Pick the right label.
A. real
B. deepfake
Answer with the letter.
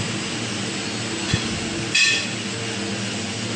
A